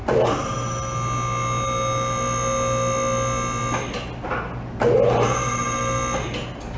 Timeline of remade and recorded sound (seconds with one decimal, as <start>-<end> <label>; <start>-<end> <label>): 0.0-6.8 recorded